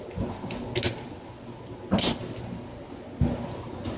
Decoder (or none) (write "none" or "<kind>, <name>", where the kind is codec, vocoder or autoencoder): none